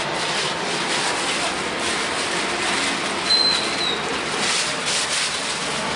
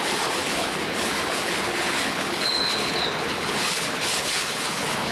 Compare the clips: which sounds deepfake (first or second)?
second